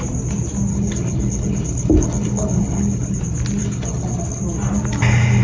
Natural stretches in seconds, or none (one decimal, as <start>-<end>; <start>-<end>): 0.0-0.7; 3.2-3.6; 4.4-5.4